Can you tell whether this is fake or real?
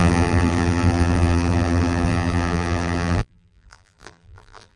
fake